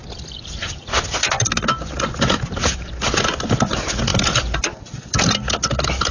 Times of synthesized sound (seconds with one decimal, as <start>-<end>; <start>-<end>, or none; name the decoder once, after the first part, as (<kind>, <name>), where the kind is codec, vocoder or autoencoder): 0.0-0.6 (vocoder, BigVGAN v2); 4.1-5.2